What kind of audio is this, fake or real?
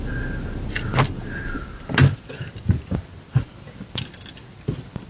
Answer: real